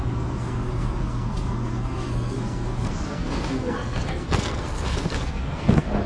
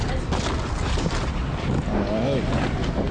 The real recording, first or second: second